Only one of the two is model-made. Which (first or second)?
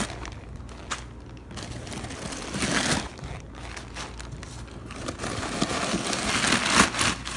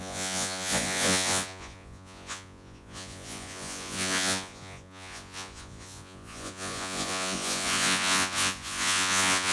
second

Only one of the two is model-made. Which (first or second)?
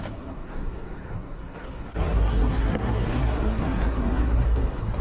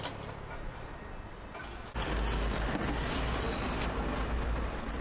first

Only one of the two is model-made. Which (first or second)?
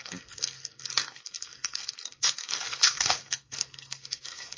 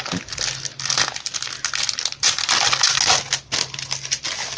first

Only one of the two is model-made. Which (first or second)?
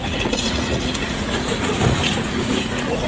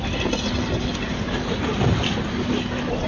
first